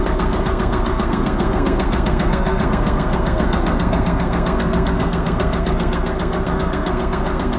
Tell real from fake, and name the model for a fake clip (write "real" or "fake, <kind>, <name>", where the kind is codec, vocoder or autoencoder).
fake, codec, SNAC